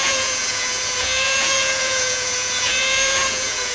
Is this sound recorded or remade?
remade